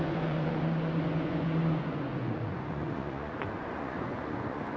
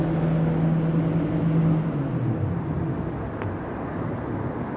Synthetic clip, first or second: first